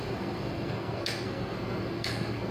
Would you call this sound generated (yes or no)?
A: yes